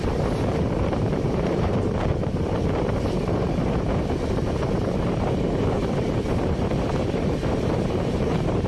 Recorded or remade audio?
remade